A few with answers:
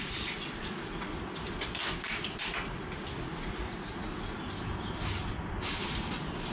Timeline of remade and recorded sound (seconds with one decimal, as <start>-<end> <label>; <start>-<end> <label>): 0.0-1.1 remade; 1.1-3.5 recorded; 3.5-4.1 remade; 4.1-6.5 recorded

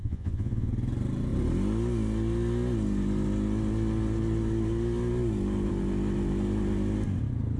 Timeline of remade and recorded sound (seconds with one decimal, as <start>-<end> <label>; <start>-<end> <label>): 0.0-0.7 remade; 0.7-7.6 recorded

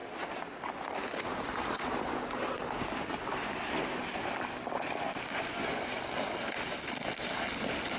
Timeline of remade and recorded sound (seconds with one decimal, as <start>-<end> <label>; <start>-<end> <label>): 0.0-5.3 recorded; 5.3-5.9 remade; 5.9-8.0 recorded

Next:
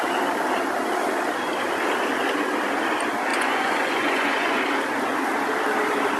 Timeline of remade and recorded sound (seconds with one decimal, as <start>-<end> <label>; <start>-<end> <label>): 0.0-3.3 recorded; 3.3-4.6 remade; 4.6-6.2 recorded

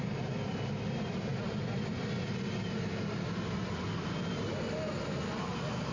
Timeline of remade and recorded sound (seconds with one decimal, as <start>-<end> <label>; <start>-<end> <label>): 0.0-5.9 recorded

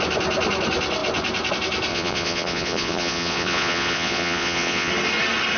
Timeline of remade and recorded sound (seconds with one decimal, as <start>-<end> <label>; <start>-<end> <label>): 0.0-1.9 recorded; 1.9-4.9 remade; 4.9-5.6 recorded

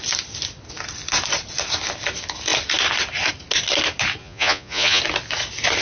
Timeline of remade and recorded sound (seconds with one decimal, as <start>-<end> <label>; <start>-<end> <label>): 0.0-4.2 recorded; 4.2-5.0 remade; 5.0-5.8 recorded

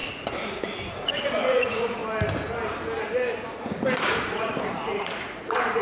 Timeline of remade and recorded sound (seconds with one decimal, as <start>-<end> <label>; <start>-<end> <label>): 0.0-2.0 remade; 2.0-3.5 recorded; 3.5-5.8 remade